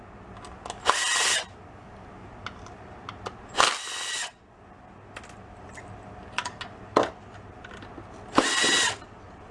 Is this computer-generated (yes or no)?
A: no